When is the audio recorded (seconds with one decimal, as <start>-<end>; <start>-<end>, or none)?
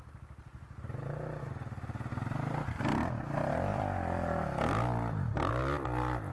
0.0-0.5; 1.4-2.1; 2.7-6.3